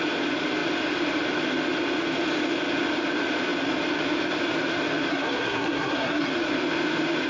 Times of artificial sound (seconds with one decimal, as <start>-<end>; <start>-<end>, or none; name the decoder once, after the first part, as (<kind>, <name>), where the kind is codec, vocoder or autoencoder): 5.1-6.3 (codec, SNAC)